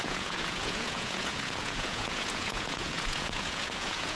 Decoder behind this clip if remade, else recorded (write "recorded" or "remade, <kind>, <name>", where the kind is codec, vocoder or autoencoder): remade, vocoder, Vocos